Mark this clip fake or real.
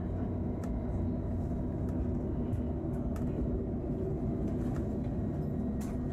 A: real